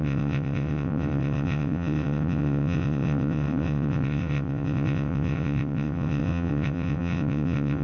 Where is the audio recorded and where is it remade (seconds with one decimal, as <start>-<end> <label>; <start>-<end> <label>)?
0.0-7.8 remade